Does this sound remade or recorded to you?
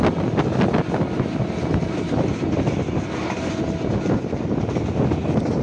recorded